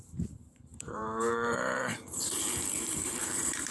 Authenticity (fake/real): fake